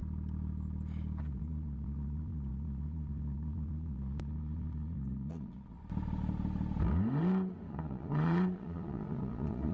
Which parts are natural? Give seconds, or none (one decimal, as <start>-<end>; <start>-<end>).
0.0-1.2; 5.8-7.7